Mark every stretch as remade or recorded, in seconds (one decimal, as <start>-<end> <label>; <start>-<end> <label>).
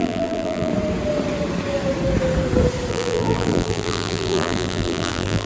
0.0-0.7 remade; 0.7-2.9 recorded; 2.9-5.5 remade